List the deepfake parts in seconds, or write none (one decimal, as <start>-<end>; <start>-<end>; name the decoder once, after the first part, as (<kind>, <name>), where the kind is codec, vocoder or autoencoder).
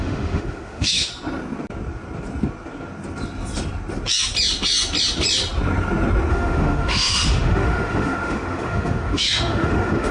0.0-1.1 (autoencoder, DAC-VAE); 6.3-10.1